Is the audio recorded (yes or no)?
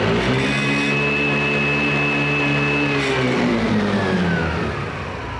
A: yes